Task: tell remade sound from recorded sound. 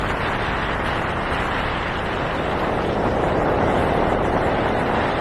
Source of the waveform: remade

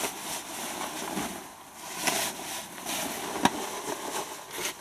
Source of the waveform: recorded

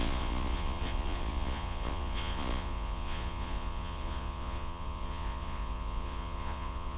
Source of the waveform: remade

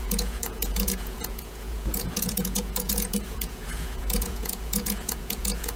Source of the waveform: remade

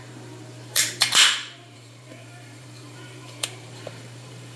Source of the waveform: remade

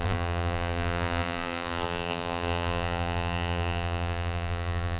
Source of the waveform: remade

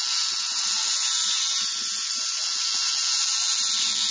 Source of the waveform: remade